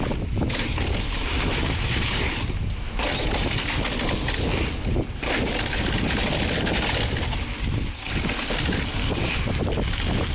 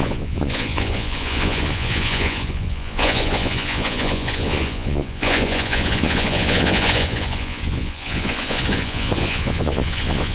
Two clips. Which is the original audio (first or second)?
first